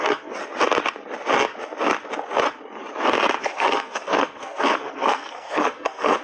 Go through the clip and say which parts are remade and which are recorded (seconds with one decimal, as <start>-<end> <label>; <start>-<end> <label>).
0.0-0.4 remade; 0.4-3.4 recorded; 3.4-6.2 remade